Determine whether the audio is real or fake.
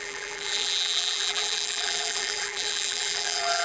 fake